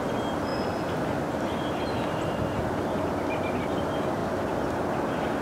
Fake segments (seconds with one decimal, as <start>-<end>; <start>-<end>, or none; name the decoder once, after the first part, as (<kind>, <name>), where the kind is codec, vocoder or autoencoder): none